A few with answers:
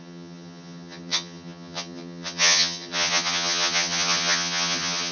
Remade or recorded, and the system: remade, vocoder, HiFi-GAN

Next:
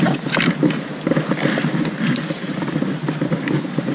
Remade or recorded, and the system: recorded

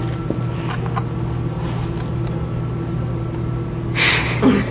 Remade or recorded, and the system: recorded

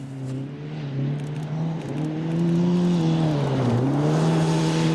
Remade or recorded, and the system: recorded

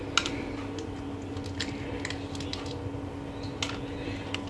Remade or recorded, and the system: recorded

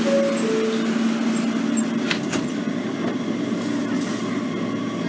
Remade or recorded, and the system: recorded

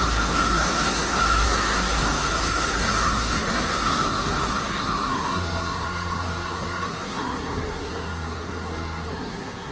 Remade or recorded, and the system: remade, codec, SNAC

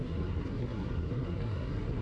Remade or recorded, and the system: remade, codec, SNAC